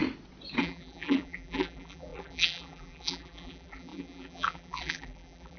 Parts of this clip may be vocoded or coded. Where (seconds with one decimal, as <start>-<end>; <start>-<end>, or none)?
0.6-5.6